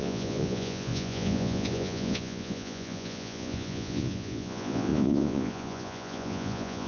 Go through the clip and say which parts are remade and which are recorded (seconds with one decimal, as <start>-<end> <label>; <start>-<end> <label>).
0.0-6.9 remade